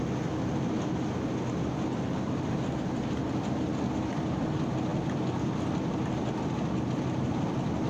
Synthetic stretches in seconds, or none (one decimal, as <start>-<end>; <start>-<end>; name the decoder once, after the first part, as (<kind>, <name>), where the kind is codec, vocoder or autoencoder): none